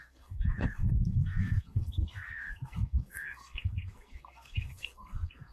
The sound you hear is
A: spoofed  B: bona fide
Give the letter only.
A